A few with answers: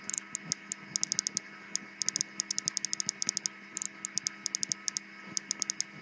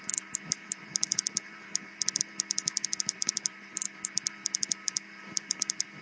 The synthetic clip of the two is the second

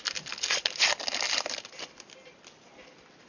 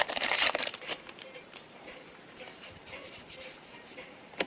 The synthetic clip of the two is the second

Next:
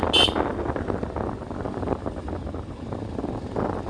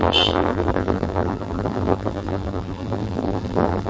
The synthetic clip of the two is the second